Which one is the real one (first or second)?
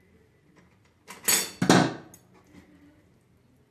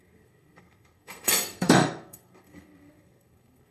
first